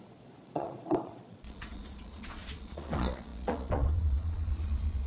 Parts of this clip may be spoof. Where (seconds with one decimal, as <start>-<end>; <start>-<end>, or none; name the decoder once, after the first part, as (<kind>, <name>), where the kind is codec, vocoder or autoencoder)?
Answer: 0.0-5.1 (vocoder, Vocos)